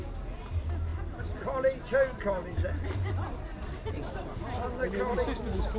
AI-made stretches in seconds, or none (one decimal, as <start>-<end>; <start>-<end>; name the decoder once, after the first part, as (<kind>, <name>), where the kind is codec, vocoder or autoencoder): 0.9-1.8 (vocoder, BigVGAN v2); 2.4-4.4